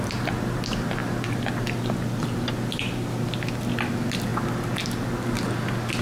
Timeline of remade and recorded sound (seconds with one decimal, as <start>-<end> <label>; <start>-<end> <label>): 0.0-6.0 recorded